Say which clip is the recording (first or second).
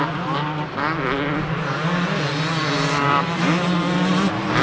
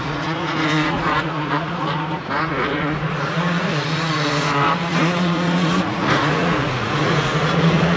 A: first